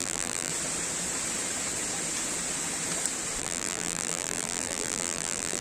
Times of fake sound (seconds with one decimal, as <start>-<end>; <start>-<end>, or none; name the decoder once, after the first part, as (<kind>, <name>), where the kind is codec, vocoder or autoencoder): 0.0-0.5 (vocoder, BigVGAN v2); 3.4-5.6